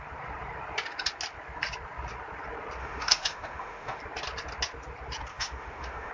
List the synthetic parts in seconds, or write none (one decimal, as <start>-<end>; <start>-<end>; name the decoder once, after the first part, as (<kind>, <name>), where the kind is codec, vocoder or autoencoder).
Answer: 2.8-4.0 (autoencoder, DAC-VAE); 5.3-6.1